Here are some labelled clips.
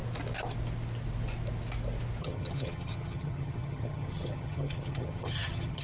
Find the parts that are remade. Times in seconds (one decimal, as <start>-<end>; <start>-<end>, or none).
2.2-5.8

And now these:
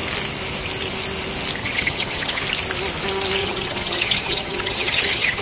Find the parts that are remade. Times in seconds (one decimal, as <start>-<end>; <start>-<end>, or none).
1.6-2.4; 3.4-5.4

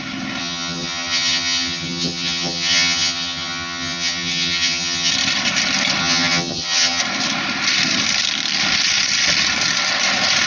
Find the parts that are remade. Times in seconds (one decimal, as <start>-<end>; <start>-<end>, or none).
0.4-5.1; 6.0-7.0